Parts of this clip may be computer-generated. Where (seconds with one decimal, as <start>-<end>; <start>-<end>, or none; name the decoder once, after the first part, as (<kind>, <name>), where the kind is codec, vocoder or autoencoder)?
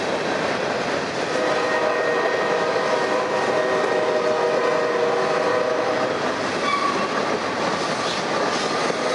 none